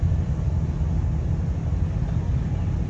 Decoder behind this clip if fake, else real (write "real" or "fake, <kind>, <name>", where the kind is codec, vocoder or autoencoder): real